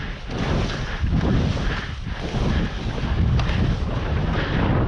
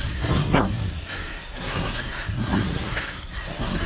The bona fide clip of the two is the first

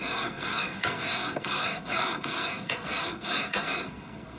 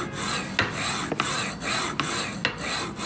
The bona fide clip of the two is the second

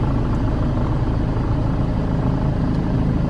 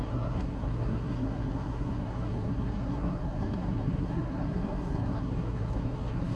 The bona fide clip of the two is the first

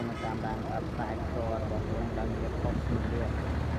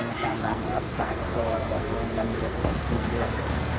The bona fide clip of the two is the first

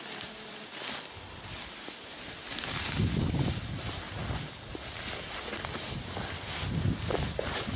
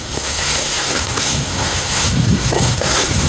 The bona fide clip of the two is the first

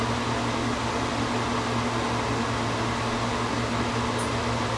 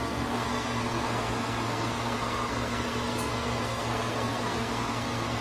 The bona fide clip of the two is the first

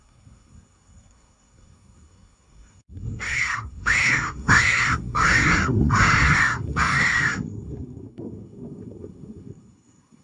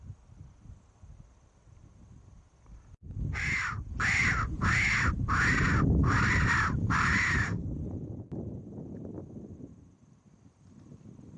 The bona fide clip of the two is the second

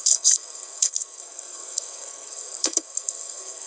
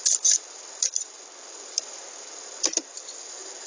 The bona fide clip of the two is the second